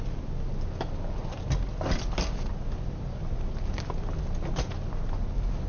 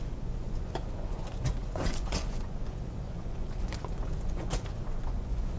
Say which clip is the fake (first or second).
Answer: second